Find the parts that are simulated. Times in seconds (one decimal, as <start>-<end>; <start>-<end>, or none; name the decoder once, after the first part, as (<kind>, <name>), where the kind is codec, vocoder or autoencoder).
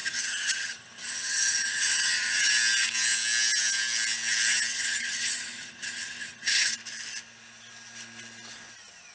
0.0-2.5 (vocoder, HiFi-GAN); 4.7-6.7